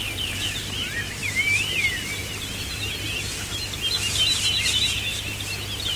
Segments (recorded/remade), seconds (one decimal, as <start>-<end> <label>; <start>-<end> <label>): 0.0-6.0 recorded